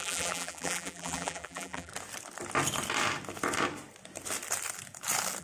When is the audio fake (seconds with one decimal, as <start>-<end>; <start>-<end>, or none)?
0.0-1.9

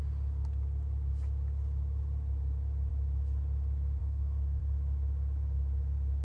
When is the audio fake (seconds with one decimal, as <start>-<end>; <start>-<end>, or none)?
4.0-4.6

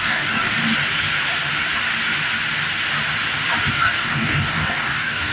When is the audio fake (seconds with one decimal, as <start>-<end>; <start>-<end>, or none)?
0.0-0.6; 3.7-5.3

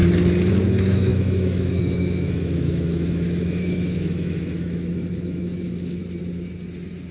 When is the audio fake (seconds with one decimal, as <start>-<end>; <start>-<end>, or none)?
0.5-6.0

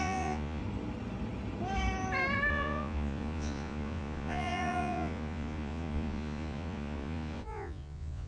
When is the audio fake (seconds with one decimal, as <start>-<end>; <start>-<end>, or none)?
0.0-0.6; 2.5-8.3